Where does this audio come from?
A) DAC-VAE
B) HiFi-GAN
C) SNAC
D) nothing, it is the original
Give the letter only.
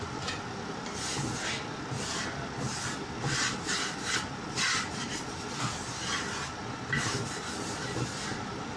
D